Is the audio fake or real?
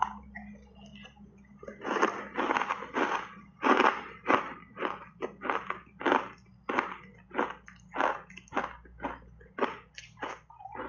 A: real